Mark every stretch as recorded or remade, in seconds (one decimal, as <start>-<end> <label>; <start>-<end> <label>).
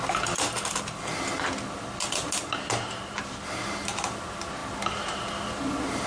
0.0-6.1 recorded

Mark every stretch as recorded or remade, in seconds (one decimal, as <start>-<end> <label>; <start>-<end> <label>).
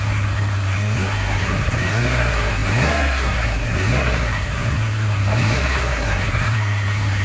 0.0-7.2 remade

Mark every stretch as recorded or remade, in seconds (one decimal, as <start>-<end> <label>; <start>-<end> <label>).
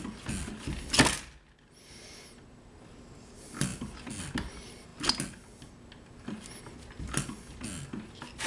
0.0-8.5 recorded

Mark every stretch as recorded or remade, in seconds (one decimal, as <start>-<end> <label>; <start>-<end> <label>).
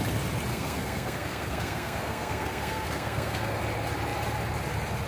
0.0-0.5 recorded; 0.5-3.6 remade; 3.6-5.1 recorded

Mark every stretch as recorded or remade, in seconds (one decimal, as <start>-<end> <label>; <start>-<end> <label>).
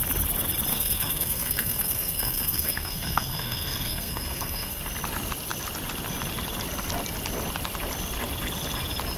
0.0-0.7 recorded; 0.7-4.8 remade; 4.8-9.2 recorded